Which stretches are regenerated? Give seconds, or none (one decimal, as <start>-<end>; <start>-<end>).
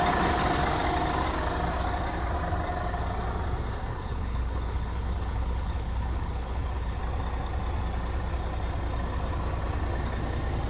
3.9-7.0